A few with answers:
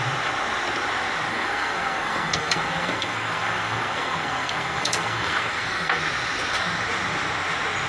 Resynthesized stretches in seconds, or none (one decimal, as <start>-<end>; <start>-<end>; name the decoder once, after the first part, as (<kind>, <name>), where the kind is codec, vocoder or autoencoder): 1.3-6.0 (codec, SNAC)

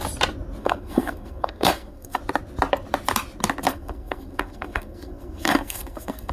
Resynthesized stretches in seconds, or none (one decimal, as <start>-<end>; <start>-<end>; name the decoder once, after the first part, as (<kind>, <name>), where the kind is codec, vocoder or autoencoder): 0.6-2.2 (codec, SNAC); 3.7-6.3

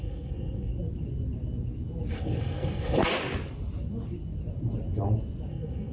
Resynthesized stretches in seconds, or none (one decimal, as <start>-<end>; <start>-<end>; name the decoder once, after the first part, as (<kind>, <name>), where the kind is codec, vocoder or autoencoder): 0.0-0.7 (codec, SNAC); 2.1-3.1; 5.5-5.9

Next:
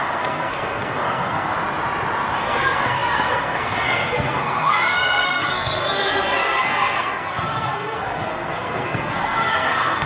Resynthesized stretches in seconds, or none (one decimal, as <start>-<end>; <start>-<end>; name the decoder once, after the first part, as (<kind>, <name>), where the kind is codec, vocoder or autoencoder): 0.0-1.5 (codec, SNAC); 2.4-10.1